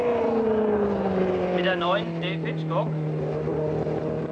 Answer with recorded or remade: recorded